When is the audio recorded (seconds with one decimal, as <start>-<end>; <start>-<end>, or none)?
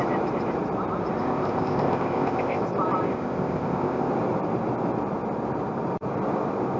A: 0.0-1.2; 2.6-3.1; 4.1-6.8